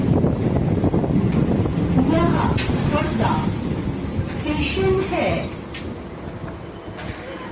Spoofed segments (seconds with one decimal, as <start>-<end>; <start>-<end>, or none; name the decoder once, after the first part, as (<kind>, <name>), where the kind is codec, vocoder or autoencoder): none